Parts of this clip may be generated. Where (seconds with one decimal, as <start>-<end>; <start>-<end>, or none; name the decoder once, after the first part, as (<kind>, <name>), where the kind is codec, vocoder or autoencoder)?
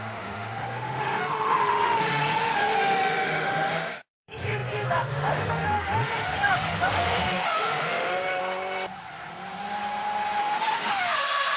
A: 0.0-8.4 (autoencoder, DAC-VAE); 10.4-11.6